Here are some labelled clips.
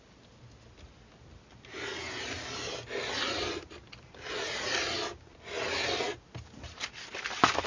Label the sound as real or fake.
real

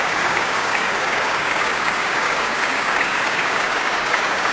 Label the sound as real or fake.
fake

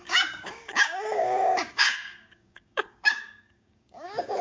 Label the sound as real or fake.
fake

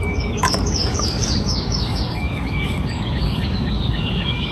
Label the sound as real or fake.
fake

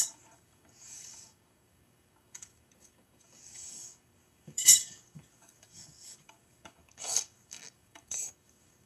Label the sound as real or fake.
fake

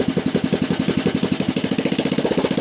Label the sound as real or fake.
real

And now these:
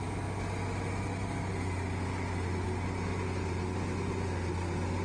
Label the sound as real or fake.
real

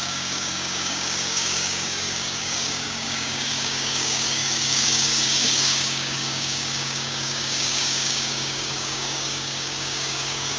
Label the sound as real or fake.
fake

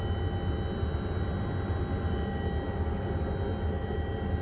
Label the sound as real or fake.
real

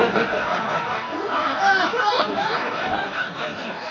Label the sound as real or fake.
fake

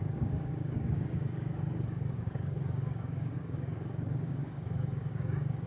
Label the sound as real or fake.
fake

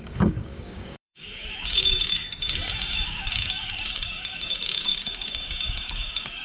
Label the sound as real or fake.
fake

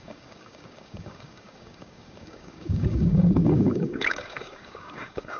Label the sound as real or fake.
fake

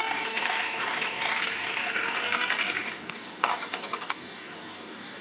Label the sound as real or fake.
fake